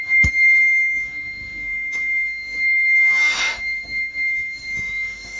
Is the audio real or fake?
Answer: fake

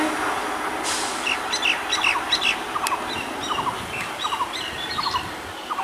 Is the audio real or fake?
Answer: real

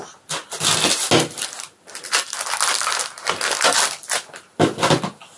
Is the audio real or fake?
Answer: real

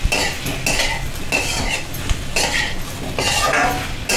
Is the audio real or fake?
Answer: real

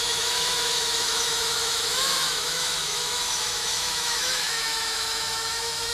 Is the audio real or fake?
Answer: fake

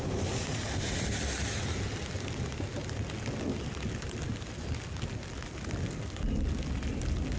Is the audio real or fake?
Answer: real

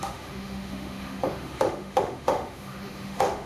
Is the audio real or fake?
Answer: fake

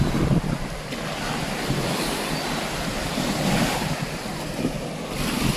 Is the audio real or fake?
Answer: real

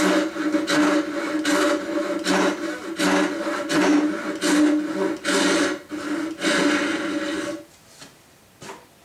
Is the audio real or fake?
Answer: real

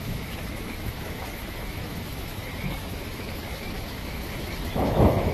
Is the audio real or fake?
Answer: fake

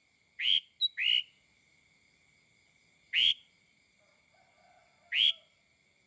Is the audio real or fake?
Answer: real